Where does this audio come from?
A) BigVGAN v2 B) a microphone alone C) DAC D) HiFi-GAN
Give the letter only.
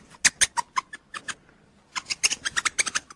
B